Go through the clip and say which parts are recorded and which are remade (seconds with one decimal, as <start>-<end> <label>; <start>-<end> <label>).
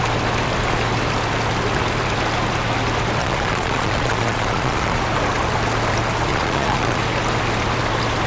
0.0-3.2 recorded; 3.2-5.0 remade; 5.0-6.3 recorded; 6.3-7.0 remade; 7.0-8.3 recorded